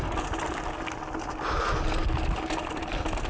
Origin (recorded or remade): recorded